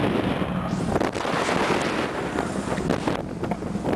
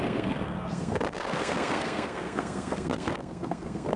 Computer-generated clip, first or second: second